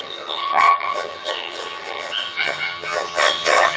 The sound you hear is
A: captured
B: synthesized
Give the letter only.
B